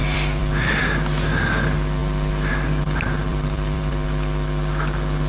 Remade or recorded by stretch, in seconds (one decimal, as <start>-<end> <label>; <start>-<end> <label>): 0.0-0.8 remade; 0.8-3.3 recorded; 3.3-3.9 remade; 3.9-5.3 recorded

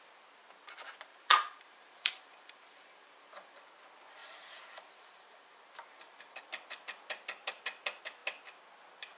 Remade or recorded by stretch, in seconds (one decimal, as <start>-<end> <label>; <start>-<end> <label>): 0.0-1.1 recorded; 1.1-3.6 remade; 3.6-4.2 recorded; 4.2-6.4 remade; 6.4-9.2 recorded

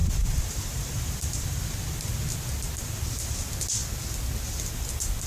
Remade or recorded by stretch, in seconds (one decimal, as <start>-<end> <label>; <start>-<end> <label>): 0.0-1.6 remade; 1.6-2.8 recorded; 2.8-3.4 remade; 3.4-5.3 recorded

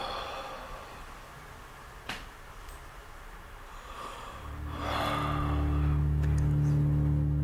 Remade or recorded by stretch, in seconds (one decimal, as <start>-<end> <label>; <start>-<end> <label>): 0.0-1.8 recorded; 1.8-4.8 remade; 4.8-7.4 recorded

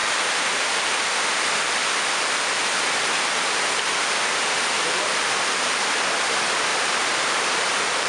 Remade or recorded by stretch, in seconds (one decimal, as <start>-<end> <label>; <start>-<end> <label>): 0.0-0.7 remade; 0.7-6.7 recorded; 6.7-8.1 remade

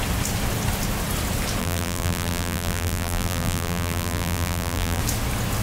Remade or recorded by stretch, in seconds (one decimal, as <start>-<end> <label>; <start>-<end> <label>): 0.0-1.6 recorded; 1.6-5.0 remade; 5.0-5.6 recorded

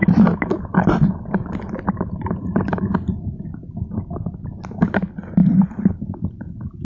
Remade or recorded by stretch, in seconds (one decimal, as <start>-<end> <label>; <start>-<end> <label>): 0.0-2.8 remade; 2.8-3.5 recorded; 3.5-4.5 remade; 4.5-5.4 recorded; 5.4-5.9 remade; 5.9-6.8 recorded

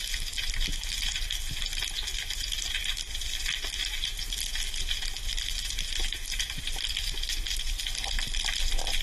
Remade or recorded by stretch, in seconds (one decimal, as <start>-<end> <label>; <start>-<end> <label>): 0.0-5.8 recorded; 5.8-6.4 remade; 6.4-9.0 recorded